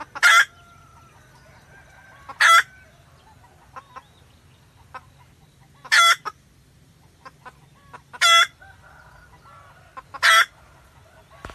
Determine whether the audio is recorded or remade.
recorded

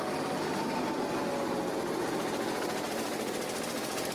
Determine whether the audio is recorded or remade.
recorded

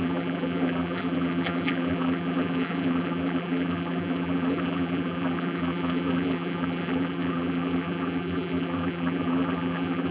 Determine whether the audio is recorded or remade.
remade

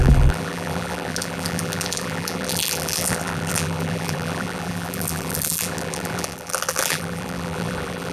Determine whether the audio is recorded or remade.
remade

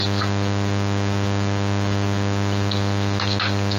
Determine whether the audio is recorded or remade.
recorded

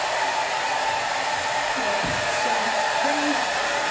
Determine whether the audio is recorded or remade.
remade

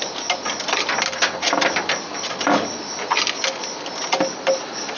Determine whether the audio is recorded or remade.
recorded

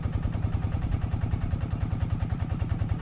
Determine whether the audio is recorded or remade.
remade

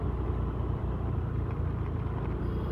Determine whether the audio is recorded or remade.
recorded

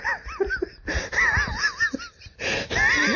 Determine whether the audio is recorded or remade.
recorded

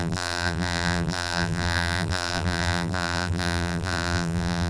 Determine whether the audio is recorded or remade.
remade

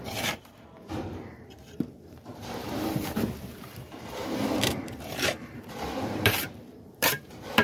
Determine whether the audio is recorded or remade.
remade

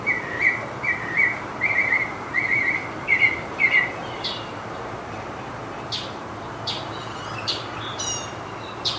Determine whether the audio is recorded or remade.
remade